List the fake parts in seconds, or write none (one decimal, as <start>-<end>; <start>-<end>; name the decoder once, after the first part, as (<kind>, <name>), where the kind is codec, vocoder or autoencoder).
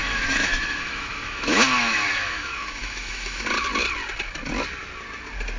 0.0-3.4 (autoencoder, DAC-VAE)